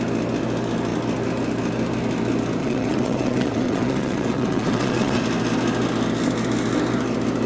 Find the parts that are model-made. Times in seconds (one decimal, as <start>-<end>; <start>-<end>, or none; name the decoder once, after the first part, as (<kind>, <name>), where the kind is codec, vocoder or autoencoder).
2.6-5.2 (vocoder, WaveNeXt)